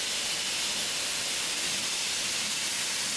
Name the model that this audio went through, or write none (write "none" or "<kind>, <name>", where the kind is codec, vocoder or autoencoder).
none